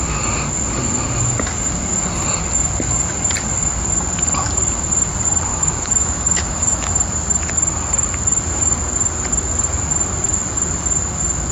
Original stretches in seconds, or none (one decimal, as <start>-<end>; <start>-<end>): 0.0-5.5; 6.9-11.5

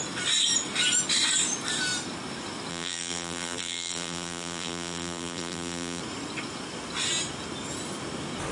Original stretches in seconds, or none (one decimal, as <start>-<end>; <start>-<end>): 0.0-2.7; 6.0-8.5

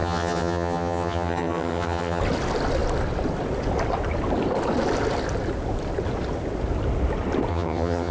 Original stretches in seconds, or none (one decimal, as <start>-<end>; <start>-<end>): 2.2-7.5

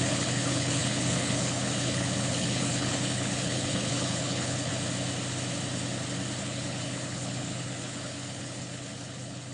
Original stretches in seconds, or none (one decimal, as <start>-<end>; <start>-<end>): 4.7-6.4